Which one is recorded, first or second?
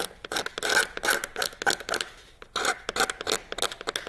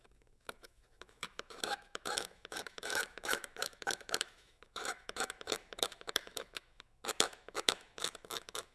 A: first